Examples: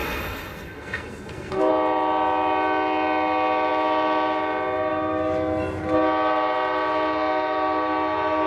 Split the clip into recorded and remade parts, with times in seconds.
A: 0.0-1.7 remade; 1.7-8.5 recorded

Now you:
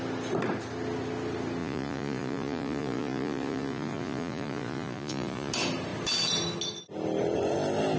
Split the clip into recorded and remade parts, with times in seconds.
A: 0.0-1.6 recorded; 1.6-5.5 remade; 5.5-8.0 recorded

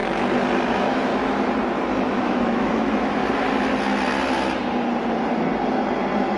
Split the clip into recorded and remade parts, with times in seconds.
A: 0.0-0.7 recorded; 0.7-1.1 remade; 1.1-2.1 recorded; 2.1-3.2 remade; 3.2-6.4 recorded

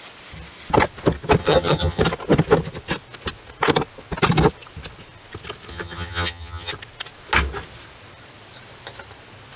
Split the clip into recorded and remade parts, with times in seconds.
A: 0.0-1.4 recorded; 1.4-2.0 remade; 2.0-5.7 recorded; 5.7-6.7 remade; 6.7-9.6 recorded

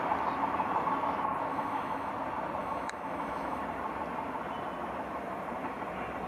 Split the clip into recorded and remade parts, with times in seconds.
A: 0.0-1.5 recorded; 1.5-2.1 remade; 2.1-2.6 recorded; 2.6-3.6 remade; 3.6-6.3 recorded